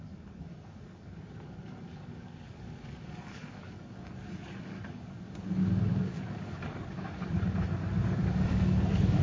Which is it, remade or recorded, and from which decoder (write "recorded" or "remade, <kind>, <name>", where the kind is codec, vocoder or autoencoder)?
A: remade, codec, DAC